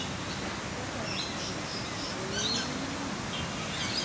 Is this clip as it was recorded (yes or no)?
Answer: yes